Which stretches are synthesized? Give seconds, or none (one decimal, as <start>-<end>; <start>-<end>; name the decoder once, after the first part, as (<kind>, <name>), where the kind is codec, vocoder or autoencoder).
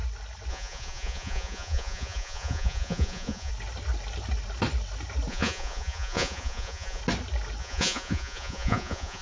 0.5-3.5 (vocoder, Vocos); 5.3-7.0; 7.6-9.2